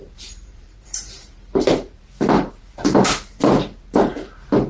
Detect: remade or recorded remade